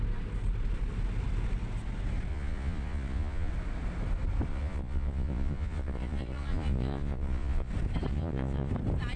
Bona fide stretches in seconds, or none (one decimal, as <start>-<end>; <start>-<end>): 0.0-2.3; 3.5-4.5; 7.7-8.1; 8.7-9.2